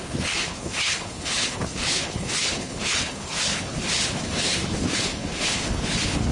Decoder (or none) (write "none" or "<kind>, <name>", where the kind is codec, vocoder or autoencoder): codec, HILCodec